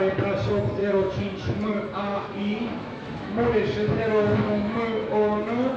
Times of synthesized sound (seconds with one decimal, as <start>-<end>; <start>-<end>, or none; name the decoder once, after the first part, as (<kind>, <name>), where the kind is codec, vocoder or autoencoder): 0.8-1.7 (autoencoder, DAC-VAE); 2.1-5.8

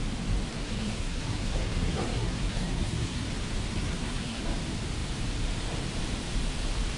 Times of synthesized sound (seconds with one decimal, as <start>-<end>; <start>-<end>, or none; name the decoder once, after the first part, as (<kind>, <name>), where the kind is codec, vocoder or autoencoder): 0.5-3.3 (codec, SNAC); 3.7-4.4

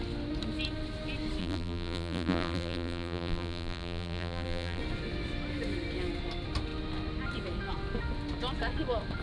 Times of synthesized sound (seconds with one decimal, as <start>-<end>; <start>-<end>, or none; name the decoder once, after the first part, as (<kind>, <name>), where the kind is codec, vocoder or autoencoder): 1.4-4.8 (vocoder, BigVGAN v2)

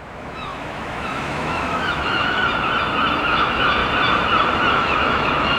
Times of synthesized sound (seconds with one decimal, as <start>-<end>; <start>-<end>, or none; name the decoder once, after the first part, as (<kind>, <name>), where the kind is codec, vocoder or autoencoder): 0.0-2.4 (autoencoder, DAC-VAE); 3.2-3.8; 4.7-5.6